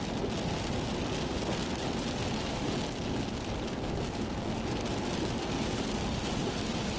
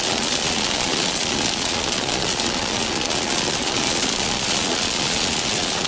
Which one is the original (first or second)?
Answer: first